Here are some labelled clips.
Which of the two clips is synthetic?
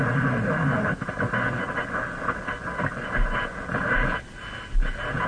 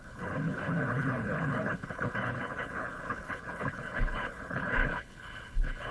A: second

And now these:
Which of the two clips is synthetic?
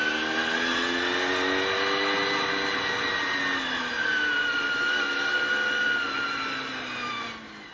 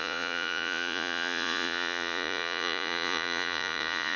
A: second